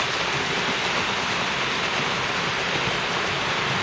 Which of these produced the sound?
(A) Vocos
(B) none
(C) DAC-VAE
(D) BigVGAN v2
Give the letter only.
B